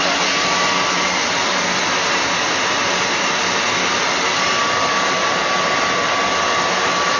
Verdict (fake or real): real